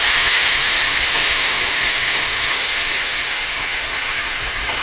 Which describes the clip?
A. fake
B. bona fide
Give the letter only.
A